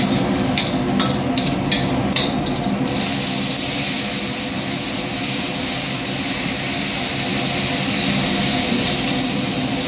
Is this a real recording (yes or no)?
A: yes